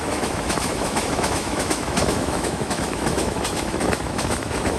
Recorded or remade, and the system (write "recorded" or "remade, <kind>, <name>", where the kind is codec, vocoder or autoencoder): remade, autoencoder, DAC-VAE